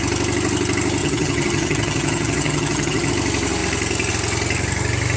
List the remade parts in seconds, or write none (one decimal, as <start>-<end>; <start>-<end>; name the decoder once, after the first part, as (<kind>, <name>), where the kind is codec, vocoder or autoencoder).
1.0-3.1 (vocoder, HiFi-GAN)